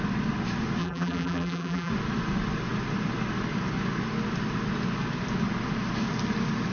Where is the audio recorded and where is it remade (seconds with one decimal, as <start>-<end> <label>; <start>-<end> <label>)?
0.0-0.8 recorded; 0.8-1.9 remade; 1.9-6.7 recorded